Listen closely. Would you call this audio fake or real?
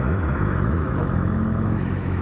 fake